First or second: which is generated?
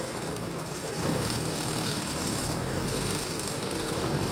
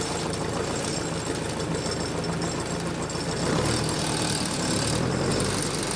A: first